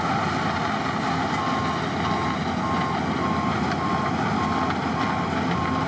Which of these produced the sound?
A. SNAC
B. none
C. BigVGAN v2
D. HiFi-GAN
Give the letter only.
B